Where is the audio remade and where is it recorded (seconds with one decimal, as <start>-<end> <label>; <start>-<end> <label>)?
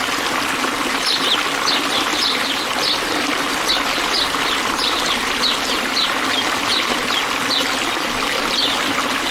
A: 0.0-2.1 recorded; 2.1-2.6 remade; 2.6-9.3 recorded